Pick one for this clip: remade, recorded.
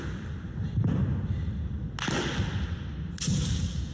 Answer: recorded